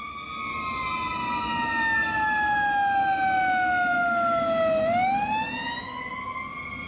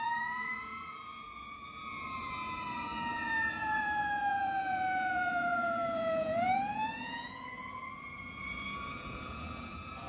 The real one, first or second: first